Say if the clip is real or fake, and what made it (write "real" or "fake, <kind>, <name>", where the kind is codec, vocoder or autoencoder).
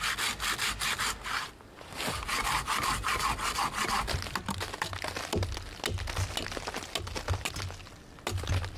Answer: real